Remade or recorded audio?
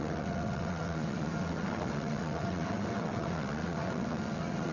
remade